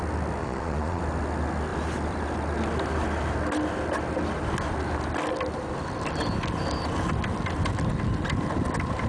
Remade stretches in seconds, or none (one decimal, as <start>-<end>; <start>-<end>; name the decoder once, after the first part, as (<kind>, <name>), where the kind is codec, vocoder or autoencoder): 0.4-1.0 (vocoder, Vocos)